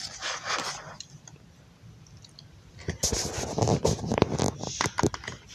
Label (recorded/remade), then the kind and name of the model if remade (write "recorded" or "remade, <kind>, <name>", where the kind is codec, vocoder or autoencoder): recorded